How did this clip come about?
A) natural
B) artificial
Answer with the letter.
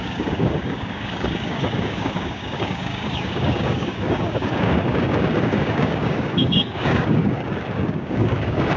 B